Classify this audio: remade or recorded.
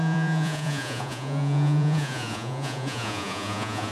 remade